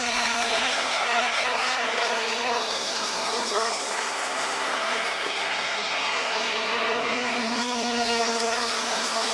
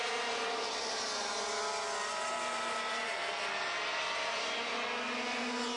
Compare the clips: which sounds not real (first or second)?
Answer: first